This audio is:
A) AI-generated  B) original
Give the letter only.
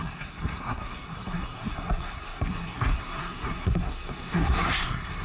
A